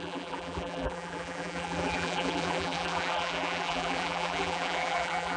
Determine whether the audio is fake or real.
fake